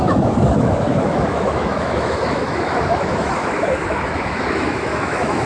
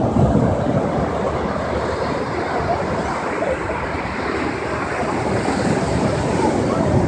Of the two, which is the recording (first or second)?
second